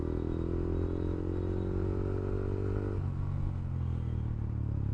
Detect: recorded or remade recorded